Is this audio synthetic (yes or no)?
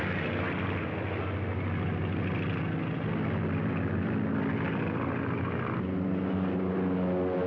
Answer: no